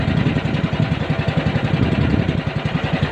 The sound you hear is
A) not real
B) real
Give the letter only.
B